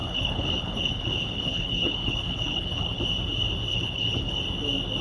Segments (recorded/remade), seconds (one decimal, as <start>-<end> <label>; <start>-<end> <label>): 0.0-3.0 remade; 3.0-3.7 recorded; 3.7-4.4 remade; 4.4-5.0 recorded